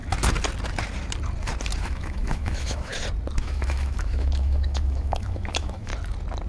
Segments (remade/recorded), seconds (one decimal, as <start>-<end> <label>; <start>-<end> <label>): 0.0-1.8 recorded; 1.8-2.9 remade; 2.9-3.4 recorded; 3.4-5.9 remade; 5.9-6.5 recorded